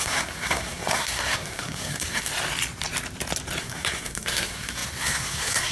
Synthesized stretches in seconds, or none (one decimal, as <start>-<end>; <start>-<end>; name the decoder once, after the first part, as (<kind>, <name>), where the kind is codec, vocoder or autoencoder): 0.0-2.3 (codec, SNAC); 3.6-5.7

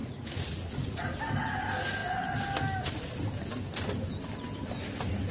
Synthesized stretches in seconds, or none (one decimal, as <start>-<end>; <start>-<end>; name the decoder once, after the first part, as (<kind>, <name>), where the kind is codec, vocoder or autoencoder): 0.0-1.0 (vocoder, Vocos)

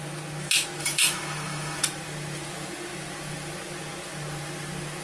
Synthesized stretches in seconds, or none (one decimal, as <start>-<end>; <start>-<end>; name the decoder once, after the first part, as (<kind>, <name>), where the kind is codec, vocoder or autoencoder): 0.8-1.8 (autoencoder, DAC-VAE)

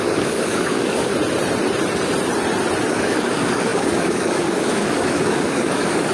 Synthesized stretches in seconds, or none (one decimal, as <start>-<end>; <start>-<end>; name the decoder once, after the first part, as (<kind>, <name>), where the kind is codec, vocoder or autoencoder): 0.0-1.1 (codec, DAC); 2.9-6.1